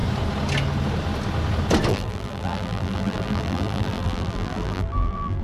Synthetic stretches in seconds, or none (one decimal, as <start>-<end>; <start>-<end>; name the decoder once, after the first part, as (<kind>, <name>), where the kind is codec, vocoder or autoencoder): 1.9-5.4 (vocoder, BigVGAN v2)